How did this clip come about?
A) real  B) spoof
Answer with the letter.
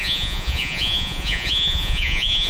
B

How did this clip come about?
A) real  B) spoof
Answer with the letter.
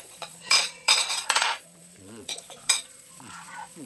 B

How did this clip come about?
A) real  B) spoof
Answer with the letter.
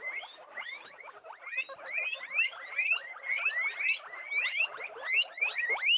A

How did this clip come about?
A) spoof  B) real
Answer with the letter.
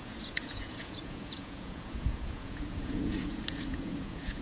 A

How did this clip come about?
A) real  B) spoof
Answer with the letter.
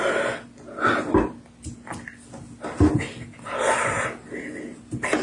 A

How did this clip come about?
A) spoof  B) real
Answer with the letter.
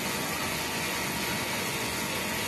A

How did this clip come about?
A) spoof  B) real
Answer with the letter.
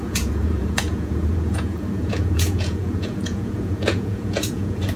A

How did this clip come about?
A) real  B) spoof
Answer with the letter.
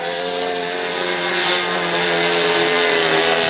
A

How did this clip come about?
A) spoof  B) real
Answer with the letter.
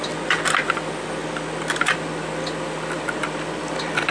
B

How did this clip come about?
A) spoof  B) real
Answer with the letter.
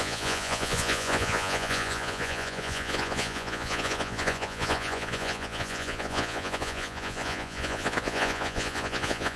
A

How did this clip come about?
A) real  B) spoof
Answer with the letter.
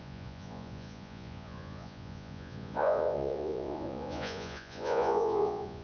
B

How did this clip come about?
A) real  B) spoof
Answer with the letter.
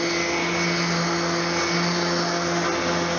A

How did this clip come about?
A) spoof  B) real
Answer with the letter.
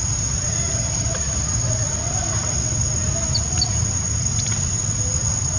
B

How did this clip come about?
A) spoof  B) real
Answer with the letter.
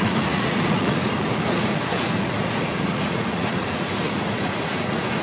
A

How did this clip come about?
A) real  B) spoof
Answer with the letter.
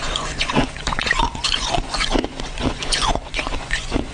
B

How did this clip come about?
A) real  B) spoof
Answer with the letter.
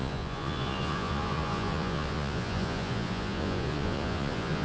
B